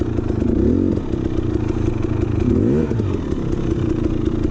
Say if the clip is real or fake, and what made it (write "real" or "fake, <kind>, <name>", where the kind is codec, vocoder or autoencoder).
real